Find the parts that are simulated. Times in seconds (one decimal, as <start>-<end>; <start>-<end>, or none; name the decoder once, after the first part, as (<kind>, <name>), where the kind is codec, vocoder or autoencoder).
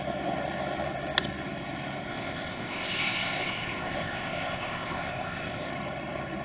2.1-5.7 (codec, ZipCodec)